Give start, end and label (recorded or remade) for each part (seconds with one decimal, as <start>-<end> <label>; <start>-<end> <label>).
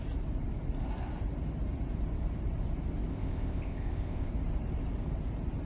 0.0-3.1 recorded; 3.1-4.3 remade; 4.3-5.7 recorded